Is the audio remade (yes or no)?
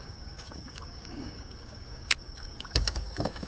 yes